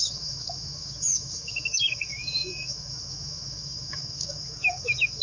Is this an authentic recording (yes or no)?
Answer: no